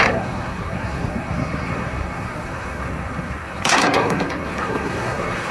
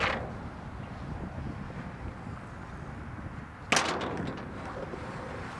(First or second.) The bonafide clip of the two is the second